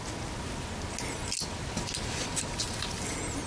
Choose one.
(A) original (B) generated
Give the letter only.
A